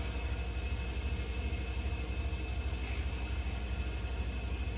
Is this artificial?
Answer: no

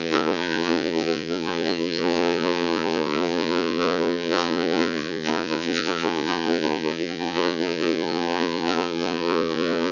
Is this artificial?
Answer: yes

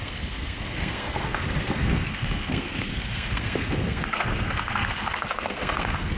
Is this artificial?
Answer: yes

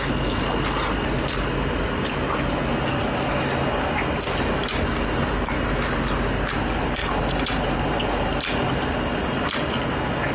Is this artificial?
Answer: no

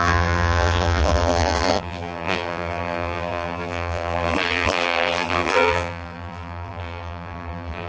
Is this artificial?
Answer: yes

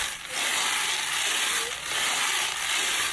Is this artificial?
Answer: no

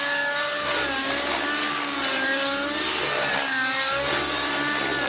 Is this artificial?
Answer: no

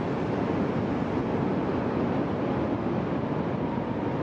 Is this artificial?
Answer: no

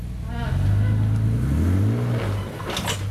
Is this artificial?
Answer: no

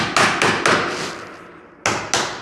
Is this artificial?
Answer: no